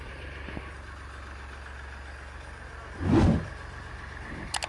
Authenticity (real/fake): real